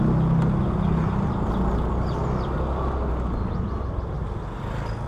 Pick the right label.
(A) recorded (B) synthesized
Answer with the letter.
A